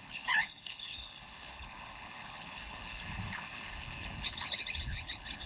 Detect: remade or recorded remade